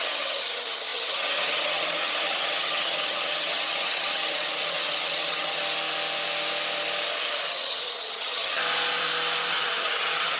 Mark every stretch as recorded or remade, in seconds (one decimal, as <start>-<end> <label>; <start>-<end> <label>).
0.0-5.6 remade; 5.6-7.5 recorded; 7.5-8.6 remade; 8.6-9.5 recorded; 9.5-10.4 remade